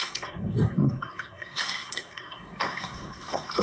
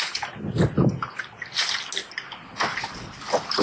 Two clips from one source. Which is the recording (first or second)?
second